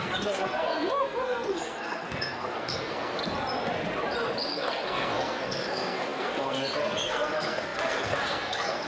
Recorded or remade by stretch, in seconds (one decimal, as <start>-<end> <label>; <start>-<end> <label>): 0.0-3.2 remade; 3.2-4.5 recorded; 4.5-8.9 remade